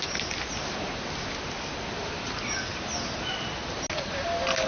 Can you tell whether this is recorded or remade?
recorded